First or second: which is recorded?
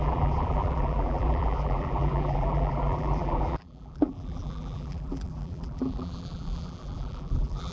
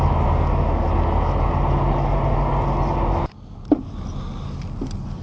second